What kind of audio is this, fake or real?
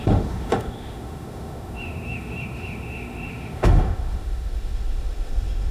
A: fake